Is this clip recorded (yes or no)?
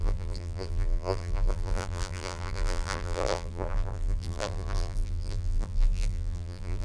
no